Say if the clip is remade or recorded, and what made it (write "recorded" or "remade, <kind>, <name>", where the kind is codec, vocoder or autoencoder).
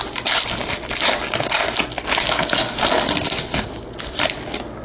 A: recorded